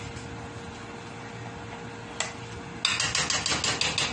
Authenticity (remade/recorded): recorded